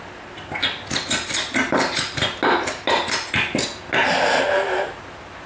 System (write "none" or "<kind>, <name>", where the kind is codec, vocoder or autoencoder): none